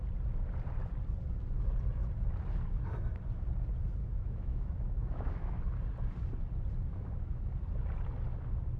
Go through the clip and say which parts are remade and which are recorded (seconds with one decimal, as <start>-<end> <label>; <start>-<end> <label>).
0.0-4.0 recorded; 4.0-5.6 remade; 5.6-6.9 recorded; 6.9-7.5 remade; 7.5-8.8 recorded